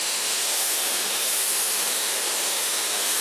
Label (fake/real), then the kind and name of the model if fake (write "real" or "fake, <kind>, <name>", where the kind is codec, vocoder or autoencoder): fake, autoencoder, DAC-VAE